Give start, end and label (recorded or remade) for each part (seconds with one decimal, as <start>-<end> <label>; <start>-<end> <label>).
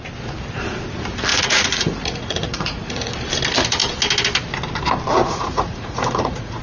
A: 0.0-1.3 recorded; 1.3-3.1 remade; 3.1-5.2 recorded; 5.2-6.6 remade